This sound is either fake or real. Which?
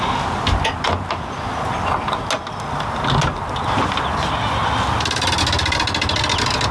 real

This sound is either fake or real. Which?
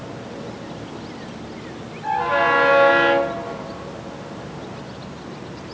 real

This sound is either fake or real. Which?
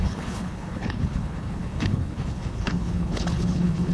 fake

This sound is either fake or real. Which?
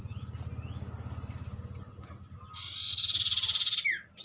real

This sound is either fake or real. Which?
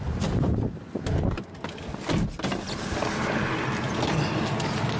real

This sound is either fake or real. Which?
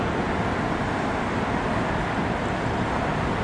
real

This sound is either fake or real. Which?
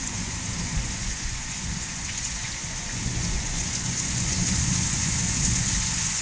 fake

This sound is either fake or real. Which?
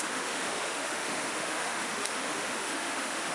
fake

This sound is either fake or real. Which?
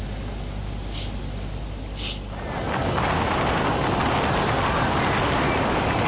real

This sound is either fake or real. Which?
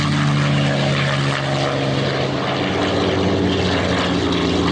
real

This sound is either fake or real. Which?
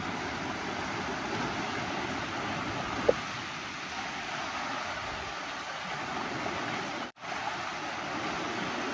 real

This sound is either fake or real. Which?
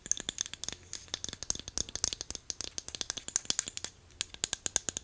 real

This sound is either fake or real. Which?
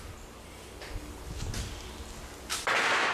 real